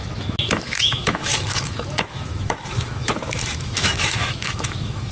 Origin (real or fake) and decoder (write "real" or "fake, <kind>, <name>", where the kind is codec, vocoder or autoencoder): fake, autoencoder, DAC-VAE